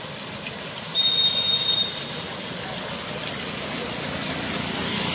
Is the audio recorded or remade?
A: recorded